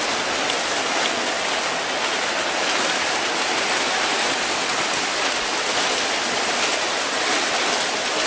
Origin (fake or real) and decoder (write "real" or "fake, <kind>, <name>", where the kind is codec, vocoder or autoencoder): real